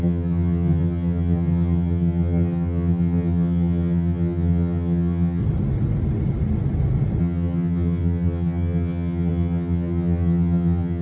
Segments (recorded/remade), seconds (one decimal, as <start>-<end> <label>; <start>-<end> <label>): 0.0-5.4 remade; 5.4-7.2 recorded; 7.2-11.0 remade